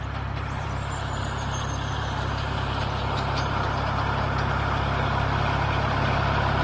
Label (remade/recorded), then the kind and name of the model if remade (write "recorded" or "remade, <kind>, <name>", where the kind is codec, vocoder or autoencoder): remade, vocoder, BigVGAN v2